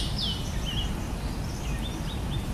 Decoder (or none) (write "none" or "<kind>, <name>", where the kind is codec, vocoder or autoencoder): none